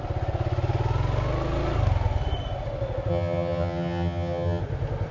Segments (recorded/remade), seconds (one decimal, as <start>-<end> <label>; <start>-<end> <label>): 0.0-3.1 recorded; 3.1-4.6 remade; 4.6-5.1 recorded